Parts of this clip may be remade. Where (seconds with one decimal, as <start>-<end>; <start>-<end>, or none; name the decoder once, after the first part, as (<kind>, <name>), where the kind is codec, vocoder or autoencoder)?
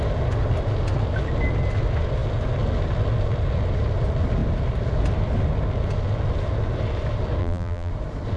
7.4-7.9 (vocoder, BigVGAN v2)